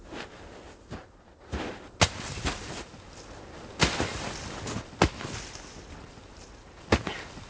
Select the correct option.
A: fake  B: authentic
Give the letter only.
B